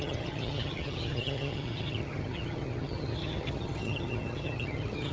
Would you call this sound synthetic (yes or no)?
yes